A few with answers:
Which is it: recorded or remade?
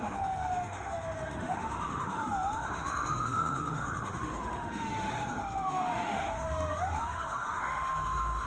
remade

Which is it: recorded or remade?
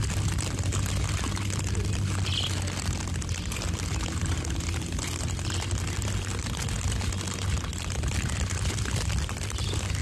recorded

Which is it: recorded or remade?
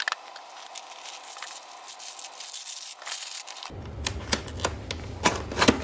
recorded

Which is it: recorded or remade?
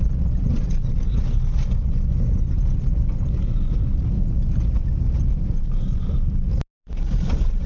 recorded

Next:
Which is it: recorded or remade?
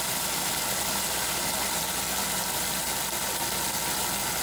recorded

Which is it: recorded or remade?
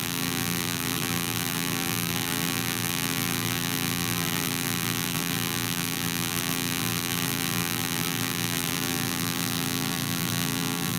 remade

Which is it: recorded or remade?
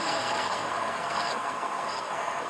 remade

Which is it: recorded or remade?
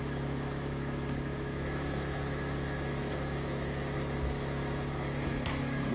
remade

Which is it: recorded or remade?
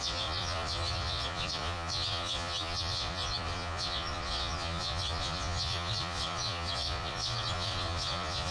remade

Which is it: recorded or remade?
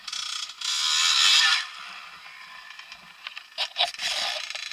recorded